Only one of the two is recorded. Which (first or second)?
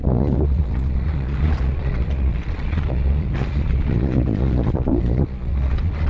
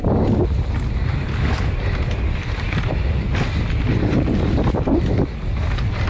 second